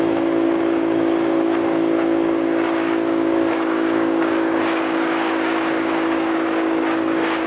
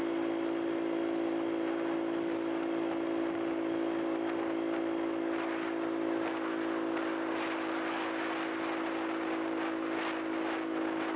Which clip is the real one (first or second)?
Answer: second